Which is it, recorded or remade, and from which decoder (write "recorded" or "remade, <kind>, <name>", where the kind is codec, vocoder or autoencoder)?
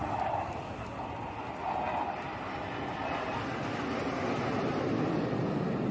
recorded